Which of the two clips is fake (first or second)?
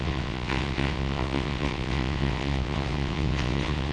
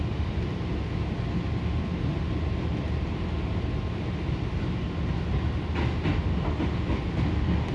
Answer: first